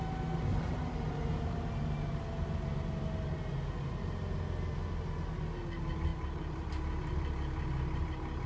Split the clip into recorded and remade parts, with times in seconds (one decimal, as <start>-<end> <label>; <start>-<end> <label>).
0.0-0.5 recorded; 0.5-2.1 remade; 2.1-6.1 recorded; 6.1-6.7 remade; 6.7-8.5 recorded